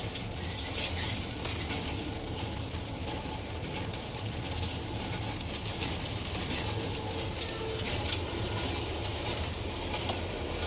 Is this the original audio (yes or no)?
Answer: yes